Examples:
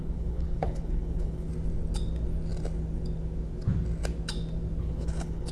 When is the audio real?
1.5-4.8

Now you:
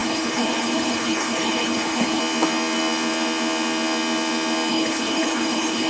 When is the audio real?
2.2-4.7

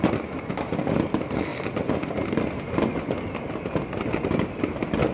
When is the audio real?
0.0-5.1

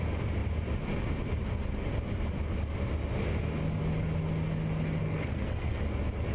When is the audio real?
0.0-5.0; 5.8-6.3

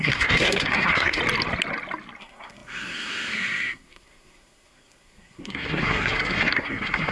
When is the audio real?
1.2-2.2

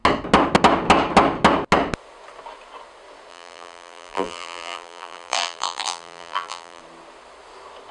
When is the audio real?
0.0-3.3; 6.8-7.9